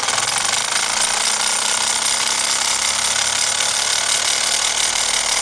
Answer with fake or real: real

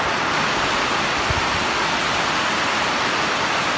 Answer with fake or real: real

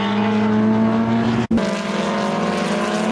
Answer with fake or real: real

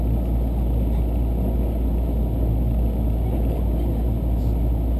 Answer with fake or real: real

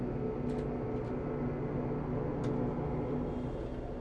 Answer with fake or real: real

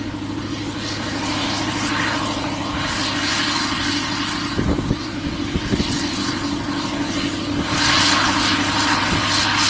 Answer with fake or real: real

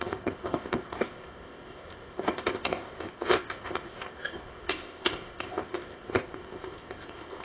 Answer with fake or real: fake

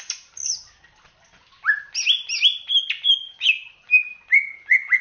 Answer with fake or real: real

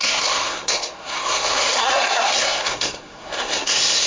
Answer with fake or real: fake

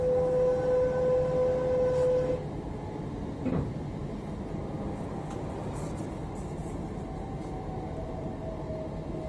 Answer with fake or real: real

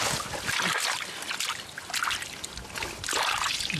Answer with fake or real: real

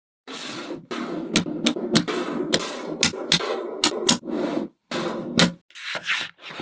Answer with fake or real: real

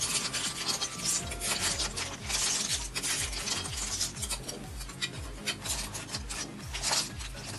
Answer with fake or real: real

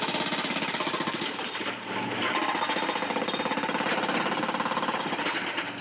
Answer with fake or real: real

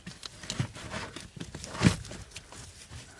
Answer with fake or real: real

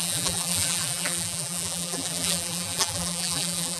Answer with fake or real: fake